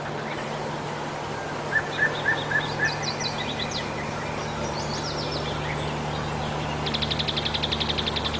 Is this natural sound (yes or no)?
yes